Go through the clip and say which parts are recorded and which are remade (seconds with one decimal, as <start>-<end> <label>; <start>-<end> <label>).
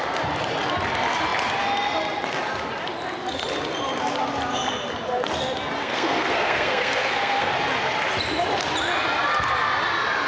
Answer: 0.0-5.8 recorded; 5.8-7.5 remade; 7.5-10.3 recorded